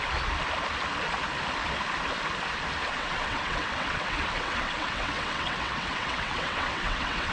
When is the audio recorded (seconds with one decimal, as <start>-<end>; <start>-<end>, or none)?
0.0-2.9